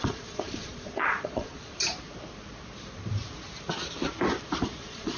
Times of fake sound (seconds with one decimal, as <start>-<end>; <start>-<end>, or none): 0.0-1.7; 4.8-5.2